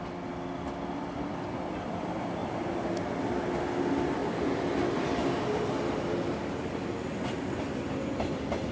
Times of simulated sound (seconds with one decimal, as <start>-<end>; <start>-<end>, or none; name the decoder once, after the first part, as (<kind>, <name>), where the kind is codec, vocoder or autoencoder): none

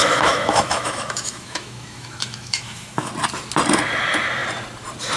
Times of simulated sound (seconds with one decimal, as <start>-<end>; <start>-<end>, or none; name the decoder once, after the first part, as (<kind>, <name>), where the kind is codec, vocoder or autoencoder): 0.0-3.1 (autoencoder, DAC-VAE)

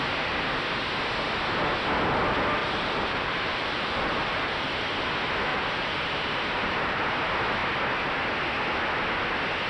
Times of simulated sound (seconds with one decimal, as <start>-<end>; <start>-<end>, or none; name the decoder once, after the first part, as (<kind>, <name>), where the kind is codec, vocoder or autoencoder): 2.6-4.7 (vocoder, BigVGAN v2); 5.5-7.0

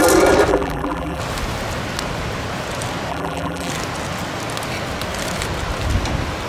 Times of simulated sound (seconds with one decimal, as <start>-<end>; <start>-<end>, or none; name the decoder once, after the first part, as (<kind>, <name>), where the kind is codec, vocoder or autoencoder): 0.5-1.2 (vocoder, BigVGAN v2); 3.1-3.7

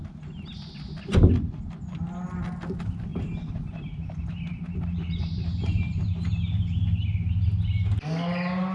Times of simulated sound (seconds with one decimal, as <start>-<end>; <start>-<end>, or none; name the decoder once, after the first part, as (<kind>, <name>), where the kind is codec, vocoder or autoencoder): 3.1-6.1 (vocoder, BigVGAN v2)

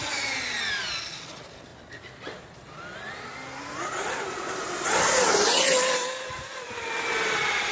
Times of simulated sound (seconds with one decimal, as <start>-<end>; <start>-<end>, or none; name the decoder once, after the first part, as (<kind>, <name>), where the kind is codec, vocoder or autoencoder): none

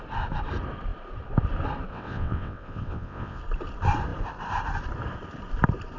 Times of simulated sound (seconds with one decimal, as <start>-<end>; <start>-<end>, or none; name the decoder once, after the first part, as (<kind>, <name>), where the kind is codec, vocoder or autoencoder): 1.9-3.4 (vocoder, WaveNeXt)

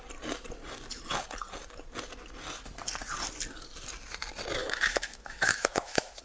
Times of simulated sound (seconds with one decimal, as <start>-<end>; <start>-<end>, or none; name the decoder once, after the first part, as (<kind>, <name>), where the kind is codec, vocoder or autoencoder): 4.6-6.2 (autoencoder, DAC-VAE)